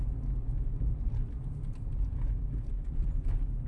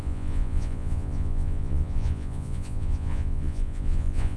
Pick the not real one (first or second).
second